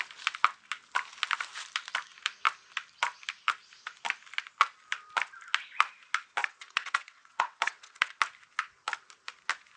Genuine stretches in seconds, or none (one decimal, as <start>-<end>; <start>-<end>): 0.0-6.4; 8.2-9.8